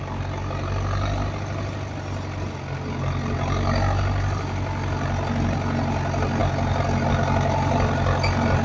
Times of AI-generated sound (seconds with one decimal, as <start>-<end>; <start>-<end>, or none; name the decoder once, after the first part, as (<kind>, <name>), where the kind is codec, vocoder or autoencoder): none